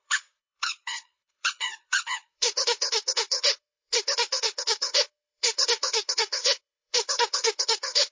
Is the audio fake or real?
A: fake